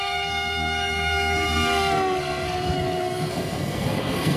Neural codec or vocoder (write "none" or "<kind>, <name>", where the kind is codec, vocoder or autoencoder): codec, SNAC